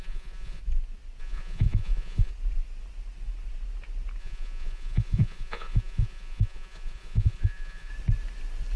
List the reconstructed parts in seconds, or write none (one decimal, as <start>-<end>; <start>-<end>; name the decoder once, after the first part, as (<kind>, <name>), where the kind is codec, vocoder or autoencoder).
0.0-0.6 (vocoder, Vocos); 1.2-2.3; 4.2-7.9

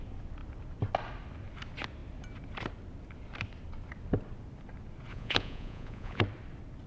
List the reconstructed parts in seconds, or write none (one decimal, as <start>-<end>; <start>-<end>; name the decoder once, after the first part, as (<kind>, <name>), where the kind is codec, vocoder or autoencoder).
5.1-6.2 (vocoder, Vocos)

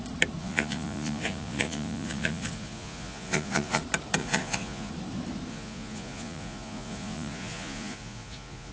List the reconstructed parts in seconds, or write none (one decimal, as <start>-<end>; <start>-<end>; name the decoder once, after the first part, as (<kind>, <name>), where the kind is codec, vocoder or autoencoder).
0.4-3.8 (vocoder, Vocos); 4.2-4.9; 5.5-8.7